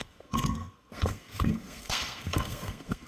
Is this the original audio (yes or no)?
no